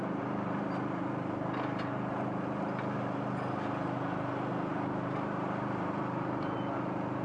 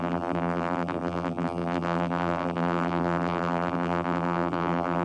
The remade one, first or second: second